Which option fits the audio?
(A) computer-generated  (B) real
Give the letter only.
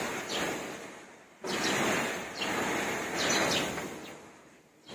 A